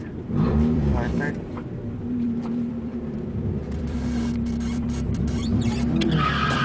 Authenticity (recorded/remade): remade